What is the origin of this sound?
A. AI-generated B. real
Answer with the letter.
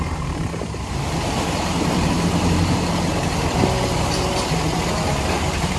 A